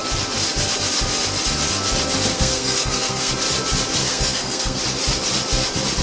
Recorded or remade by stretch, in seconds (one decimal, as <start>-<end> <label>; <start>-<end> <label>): 0.0-2.3 recorded; 2.3-3.3 remade; 3.3-4.0 recorded; 4.0-4.8 remade; 4.8-6.0 recorded